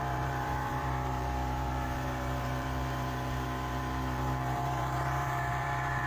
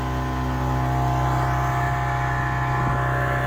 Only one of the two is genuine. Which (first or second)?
second